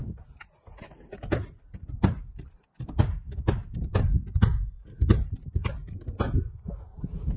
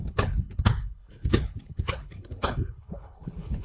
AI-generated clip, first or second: second